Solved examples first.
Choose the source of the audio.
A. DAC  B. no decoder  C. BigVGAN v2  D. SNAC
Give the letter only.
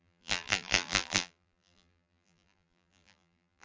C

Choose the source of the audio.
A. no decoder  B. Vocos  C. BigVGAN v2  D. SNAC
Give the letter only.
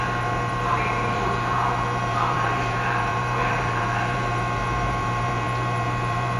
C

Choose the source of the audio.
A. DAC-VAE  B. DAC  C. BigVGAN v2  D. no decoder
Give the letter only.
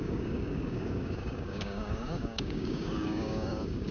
B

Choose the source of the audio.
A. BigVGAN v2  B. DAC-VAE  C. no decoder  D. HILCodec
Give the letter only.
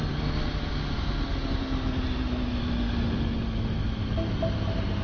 C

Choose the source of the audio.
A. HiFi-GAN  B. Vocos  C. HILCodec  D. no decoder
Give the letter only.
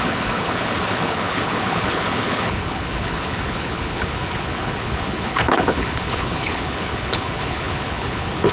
C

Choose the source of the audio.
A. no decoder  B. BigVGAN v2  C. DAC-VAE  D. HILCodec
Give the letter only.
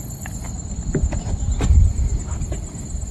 A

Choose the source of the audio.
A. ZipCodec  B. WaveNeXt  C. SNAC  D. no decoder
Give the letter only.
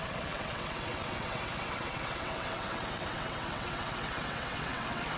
B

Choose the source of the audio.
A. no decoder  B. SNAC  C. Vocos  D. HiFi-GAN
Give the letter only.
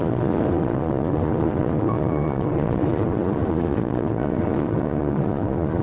C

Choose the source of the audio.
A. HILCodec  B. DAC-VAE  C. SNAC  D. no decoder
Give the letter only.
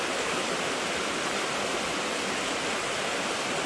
D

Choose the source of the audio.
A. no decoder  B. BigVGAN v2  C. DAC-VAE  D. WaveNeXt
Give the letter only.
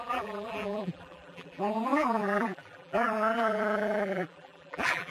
B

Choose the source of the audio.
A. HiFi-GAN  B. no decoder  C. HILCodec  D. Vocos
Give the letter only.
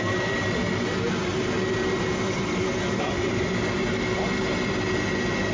B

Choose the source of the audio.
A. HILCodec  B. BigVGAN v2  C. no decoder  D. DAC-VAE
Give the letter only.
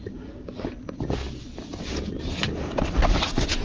C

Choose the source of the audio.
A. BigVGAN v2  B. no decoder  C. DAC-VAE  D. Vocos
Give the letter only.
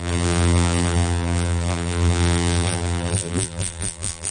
A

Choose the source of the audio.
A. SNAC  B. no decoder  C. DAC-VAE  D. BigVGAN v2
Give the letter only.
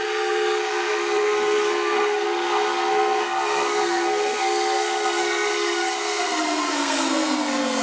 A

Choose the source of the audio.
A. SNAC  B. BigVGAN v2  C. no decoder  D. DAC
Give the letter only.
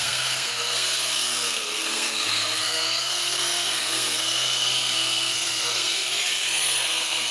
A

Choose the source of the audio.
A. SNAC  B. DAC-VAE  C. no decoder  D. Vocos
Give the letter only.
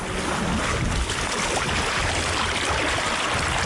C